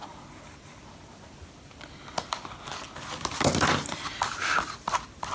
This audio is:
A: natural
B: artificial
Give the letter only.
A